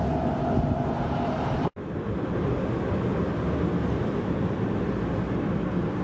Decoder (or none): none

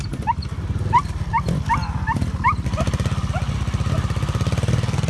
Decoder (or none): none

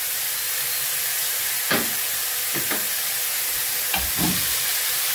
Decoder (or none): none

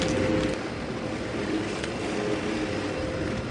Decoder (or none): none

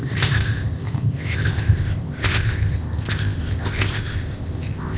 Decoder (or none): codec, ZipCodec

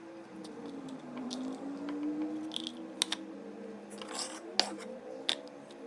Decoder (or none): none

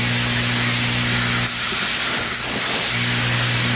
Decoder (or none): none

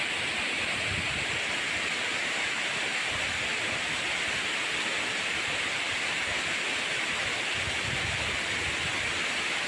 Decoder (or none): none